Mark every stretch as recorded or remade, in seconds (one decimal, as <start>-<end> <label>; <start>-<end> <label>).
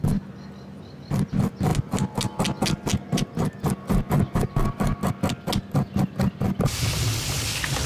0.0-7.9 recorded